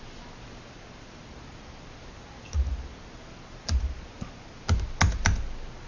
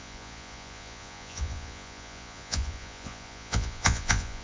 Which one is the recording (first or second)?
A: first